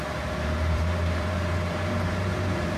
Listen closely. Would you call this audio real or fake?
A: fake